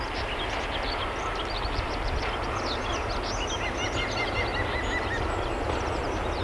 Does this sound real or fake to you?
real